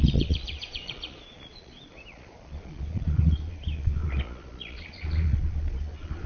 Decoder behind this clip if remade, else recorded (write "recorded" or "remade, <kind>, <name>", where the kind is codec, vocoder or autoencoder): remade, vocoder, Vocos